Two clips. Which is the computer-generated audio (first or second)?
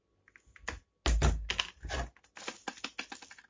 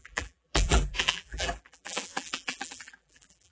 second